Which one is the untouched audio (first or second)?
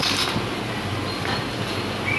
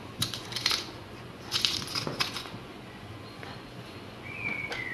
first